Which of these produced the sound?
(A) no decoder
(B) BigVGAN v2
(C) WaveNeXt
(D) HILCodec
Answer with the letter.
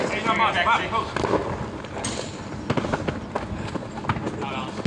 A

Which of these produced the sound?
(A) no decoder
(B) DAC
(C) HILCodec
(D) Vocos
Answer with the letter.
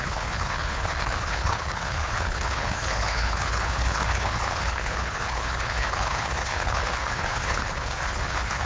C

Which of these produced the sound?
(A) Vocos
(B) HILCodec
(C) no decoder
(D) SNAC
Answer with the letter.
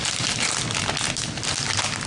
C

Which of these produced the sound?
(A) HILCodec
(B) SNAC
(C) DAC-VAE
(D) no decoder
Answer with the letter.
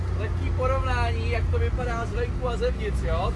D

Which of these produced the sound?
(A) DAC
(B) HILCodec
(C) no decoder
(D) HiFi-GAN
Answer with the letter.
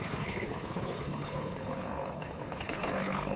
B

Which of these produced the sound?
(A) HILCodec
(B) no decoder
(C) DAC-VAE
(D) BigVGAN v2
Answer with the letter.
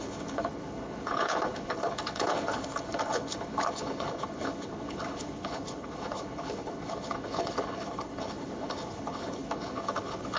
A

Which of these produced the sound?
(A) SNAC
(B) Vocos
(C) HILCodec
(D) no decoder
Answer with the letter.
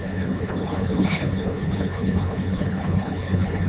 C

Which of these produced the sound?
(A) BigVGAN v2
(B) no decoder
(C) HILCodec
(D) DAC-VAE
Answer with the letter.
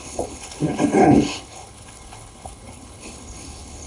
C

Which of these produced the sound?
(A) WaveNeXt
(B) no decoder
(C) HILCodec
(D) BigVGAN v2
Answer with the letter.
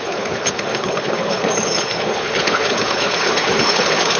C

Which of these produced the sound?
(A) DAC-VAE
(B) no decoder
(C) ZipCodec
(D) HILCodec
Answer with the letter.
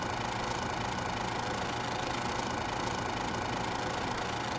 B